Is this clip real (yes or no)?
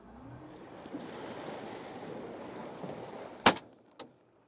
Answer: yes